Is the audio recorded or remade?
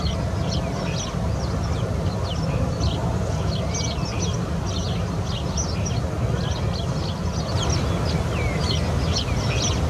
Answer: recorded